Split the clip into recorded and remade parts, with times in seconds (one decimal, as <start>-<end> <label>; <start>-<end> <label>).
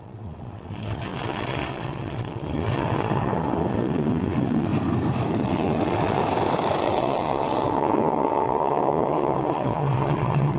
0.0-4.7 remade; 4.7-5.3 recorded; 5.3-6.2 remade; 6.2-6.8 recorded; 6.8-10.6 remade